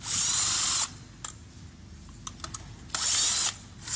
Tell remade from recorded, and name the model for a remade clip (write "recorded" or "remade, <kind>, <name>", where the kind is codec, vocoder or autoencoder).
recorded